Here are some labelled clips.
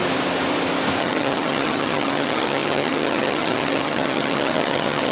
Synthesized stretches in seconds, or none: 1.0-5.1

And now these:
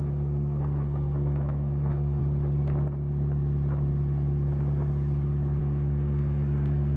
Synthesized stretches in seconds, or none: 0.0-2.2; 5.6-7.0

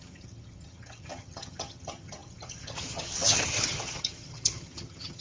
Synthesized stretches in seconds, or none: 0.0-5.2

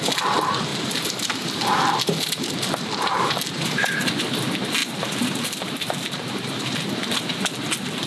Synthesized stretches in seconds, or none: 0.7-4.1; 4.8-6.8

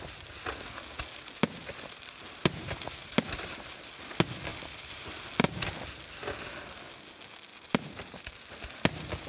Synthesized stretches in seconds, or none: 1.6-3.9; 4.5-5.2; 7.5-8.2